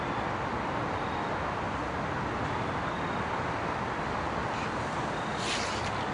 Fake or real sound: real